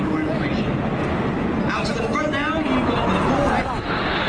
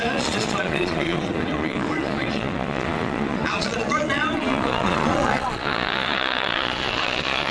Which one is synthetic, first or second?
second